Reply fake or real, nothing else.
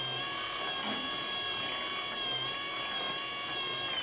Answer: real